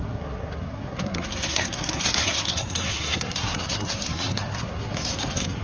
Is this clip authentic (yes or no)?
no